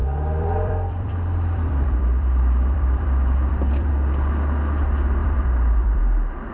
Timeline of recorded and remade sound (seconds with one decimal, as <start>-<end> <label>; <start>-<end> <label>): 0.0-3.9 remade; 3.9-5.2 recorded; 5.2-6.0 remade; 6.0-6.5 recorded